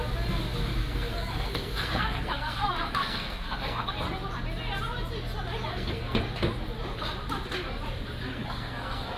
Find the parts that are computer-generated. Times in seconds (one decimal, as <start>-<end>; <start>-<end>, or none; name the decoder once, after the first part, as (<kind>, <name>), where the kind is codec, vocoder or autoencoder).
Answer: 0.8-3.9 (codec, SNAC); 5.7-6.2; 8.3-9.2